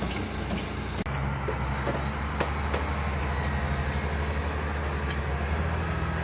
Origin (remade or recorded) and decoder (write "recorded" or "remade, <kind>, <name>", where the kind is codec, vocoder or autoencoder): recorded